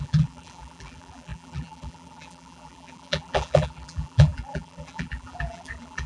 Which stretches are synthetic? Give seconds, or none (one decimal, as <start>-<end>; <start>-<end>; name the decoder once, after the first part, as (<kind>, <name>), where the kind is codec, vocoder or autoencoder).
0.0-6.1 (vocoder, BigVGAN v2)